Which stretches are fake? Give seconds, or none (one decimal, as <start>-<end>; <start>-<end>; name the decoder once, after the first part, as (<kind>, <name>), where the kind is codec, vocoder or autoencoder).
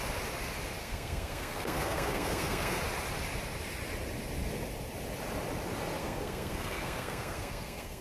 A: 0.8-2.8 (codec, SNAC); 6.0-8.0